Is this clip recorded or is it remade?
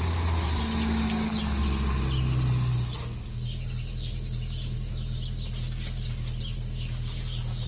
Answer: recorded